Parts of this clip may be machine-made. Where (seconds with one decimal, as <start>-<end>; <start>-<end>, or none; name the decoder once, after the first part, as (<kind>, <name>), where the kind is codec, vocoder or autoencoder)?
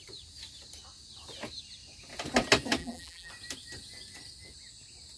2.8-3.3 (vocoder, BigVGAN v2)